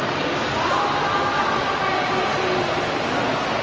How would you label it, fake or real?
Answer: real